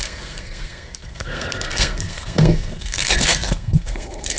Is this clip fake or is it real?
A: fake